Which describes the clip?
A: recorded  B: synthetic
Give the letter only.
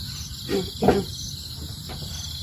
A